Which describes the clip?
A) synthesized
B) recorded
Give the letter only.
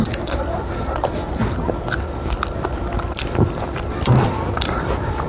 A